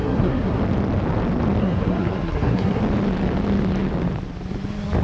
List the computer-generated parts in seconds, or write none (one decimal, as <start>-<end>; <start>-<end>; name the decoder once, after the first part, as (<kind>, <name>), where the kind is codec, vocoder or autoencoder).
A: 0.0-0.6 (codec, SNAC); 1.6-2.8